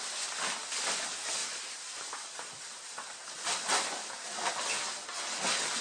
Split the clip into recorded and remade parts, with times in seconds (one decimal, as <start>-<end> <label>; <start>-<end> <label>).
0.0-1.4 recorded; 1.4-4.5 remade; 4.5-5.8 recorded

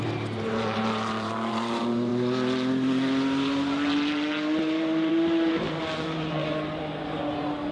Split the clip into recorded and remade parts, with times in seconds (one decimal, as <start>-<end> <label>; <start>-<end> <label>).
0.0-2.1 remade; 2.1-4.6 recorded; 4.6-7.7 remade

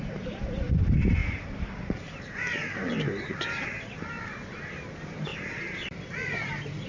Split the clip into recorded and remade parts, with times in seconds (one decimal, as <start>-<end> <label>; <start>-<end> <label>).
0.0-6.9 remade

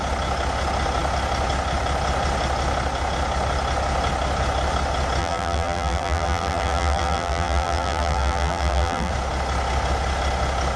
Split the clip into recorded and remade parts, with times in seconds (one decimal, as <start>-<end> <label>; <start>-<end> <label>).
0.0-5.2 recorded; 5.2-9.1 remade; 9.1-10.8 recorded

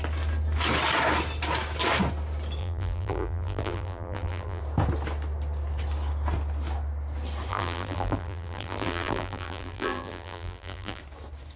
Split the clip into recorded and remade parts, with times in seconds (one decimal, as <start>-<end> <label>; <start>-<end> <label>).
0.0-2.6 recorded; 2.6-4.6 remade; 4.6-7.5 recorded; 7.5-11.0 remade; 11.0-11.6 recorded